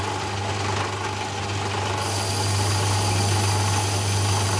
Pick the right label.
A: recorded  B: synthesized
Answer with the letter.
A